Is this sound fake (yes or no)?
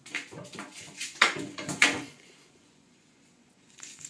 yes